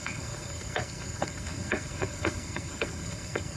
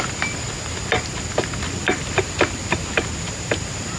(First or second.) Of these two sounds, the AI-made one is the first